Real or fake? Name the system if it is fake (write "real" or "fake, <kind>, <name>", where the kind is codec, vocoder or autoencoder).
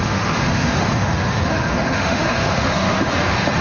fake, autoencoder, DAC-VAE